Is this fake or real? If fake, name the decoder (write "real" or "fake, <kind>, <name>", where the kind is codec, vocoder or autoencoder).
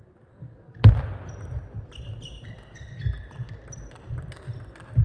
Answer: real